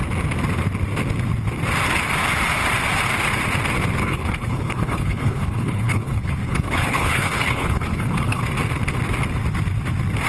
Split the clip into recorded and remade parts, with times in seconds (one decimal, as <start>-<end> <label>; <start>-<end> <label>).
0.0-4.0 recorded; 4.0-8.4 remade; 8.4-10.3 recorded